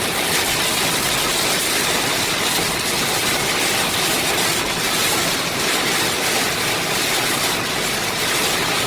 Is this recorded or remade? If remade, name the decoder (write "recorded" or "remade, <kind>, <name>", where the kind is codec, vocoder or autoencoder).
recorded